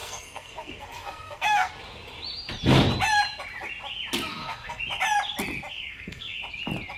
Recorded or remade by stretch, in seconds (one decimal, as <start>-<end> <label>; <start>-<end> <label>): 0.0-1.7 remade; 1.7-4.3 recorded; 4.3-4.8 remade; 4.8-5.7 recorded; 5.7-6.4 remade; 6.4-7.0 recorded